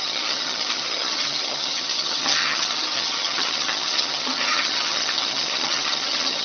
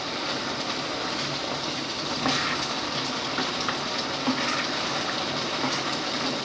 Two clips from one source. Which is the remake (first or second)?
first